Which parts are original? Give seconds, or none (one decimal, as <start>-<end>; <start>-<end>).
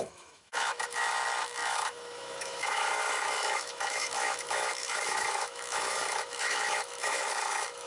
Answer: none